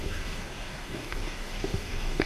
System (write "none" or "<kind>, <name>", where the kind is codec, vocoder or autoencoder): codec, DAC